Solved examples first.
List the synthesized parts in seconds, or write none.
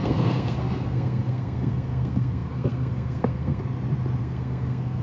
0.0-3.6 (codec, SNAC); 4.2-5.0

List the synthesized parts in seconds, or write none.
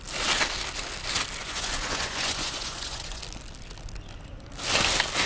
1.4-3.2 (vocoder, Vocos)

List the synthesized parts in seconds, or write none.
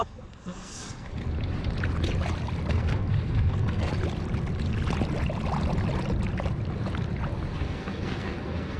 0.0-1.2 (codec, SNAC); 2.7-3.9; 7.5-8.8